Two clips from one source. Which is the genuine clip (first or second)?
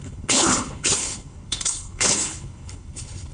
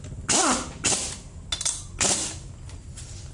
second